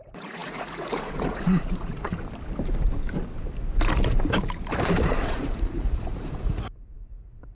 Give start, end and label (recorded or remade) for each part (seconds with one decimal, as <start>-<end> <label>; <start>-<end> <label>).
0.0-2.1 remade; 2.1-5.0 recorded; 5.0-7.5 remade